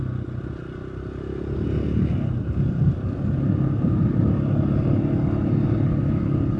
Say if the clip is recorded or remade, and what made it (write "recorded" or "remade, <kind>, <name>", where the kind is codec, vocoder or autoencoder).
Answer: recorded